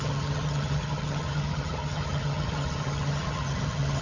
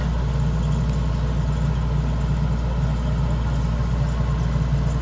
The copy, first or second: first